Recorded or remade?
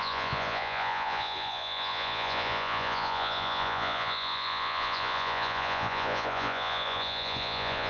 remade